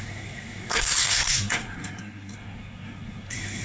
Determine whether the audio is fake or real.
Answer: fake